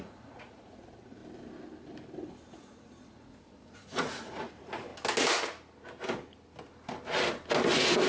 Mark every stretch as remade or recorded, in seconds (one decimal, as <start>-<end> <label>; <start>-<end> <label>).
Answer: 0.0-1.2 remade; 1.2-2.5 recorded; 2.5-4.9 remade; 4.9-8.1 recorded